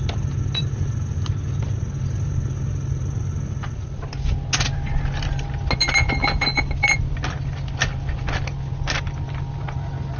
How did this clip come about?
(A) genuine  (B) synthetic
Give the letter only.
A